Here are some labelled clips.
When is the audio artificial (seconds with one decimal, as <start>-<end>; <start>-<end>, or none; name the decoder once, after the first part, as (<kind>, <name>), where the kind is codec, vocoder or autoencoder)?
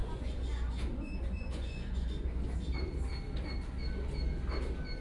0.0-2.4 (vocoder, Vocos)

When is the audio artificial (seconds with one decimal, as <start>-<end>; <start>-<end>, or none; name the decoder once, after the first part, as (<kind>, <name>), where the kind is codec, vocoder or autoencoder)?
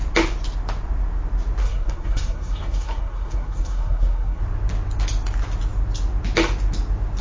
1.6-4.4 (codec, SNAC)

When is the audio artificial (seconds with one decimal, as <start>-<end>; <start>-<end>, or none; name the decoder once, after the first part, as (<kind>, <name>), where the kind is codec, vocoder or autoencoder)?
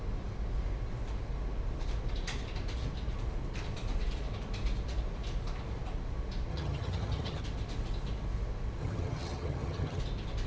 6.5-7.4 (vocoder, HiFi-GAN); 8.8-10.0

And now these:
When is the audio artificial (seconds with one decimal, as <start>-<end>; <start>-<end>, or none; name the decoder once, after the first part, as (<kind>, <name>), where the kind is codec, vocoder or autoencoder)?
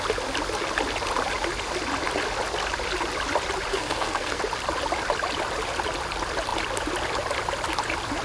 3.7-4.4 (codec, SNAC)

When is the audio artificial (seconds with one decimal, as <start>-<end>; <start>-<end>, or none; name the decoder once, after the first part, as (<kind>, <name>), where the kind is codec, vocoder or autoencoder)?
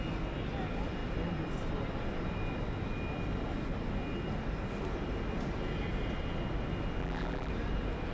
7.0-7.5 (vocoder, BigVGAN v2)